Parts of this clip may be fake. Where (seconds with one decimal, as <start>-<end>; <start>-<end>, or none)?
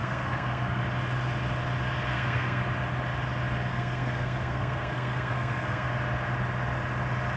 0.0-0.8; 2.1-2.6; 3.7-5.9